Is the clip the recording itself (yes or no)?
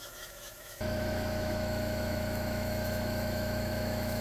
no